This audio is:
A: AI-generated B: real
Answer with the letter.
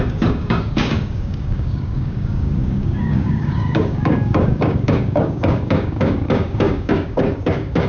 A